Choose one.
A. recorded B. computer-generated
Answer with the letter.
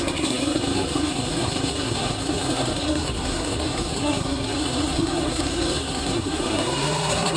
B